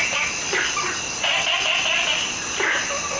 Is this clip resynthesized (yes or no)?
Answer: no